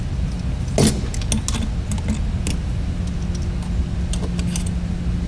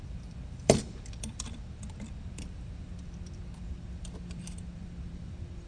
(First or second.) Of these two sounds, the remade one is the second